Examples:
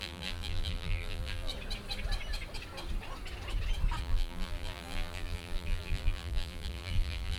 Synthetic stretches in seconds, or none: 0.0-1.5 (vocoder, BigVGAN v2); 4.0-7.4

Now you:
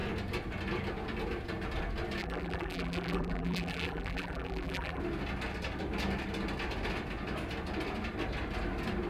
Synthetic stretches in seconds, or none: 2.2-5.0 (vocoder, BigVGAN v2)